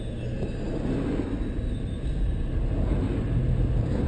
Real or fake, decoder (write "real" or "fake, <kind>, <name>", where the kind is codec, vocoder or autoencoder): real